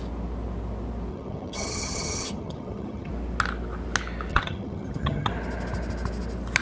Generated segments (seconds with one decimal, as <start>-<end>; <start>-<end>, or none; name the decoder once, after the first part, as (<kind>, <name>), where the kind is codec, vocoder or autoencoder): 1.1-3.1 (vocoder, HiFi-GAN); 4.3-5.3